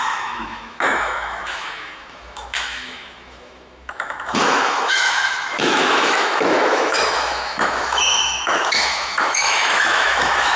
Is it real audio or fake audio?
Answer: fake